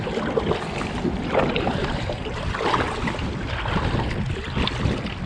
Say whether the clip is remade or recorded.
recorded